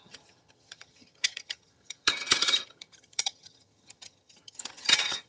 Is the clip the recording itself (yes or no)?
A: no